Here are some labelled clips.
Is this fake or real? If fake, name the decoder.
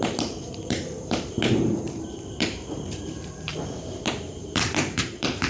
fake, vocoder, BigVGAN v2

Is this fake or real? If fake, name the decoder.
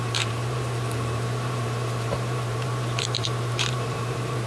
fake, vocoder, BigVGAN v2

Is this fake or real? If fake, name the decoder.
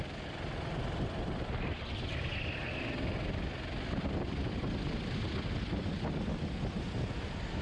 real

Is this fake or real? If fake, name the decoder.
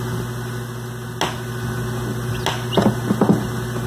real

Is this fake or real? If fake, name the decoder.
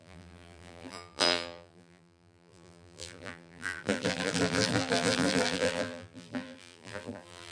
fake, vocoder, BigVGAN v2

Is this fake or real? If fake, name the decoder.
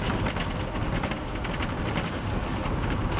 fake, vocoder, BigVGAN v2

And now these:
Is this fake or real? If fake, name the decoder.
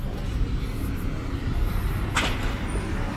real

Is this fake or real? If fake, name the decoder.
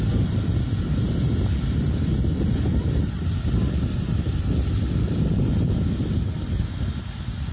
real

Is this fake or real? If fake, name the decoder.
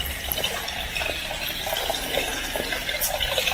real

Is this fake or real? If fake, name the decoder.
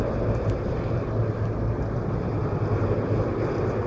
real